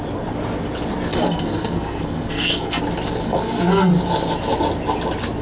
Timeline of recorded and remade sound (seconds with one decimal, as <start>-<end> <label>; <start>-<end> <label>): 0.0-1.1 recorded; 1.1-2.8 remade; 2.8-3.3 recorded; 3.3-3.9 remade; 3.9-5.4 recorded

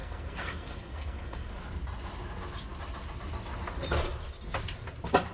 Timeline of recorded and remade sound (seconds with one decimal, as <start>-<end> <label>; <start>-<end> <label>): 0.0-1.5 remade; 1.5-5.3 recorded

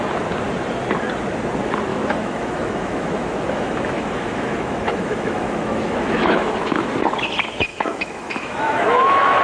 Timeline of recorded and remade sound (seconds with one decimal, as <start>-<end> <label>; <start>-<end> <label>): 0.0-1.9 recorded; 1.9-6.9 remade; 6.9-7.7 recorded; 7.7-9.4 remade

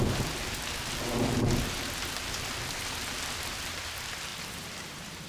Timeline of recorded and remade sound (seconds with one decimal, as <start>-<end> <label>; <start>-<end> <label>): 0.0-4.3 recorded; 4.3-5.3 remade